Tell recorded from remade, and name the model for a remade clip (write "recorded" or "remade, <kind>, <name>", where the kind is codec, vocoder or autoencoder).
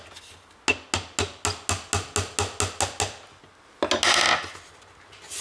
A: recorded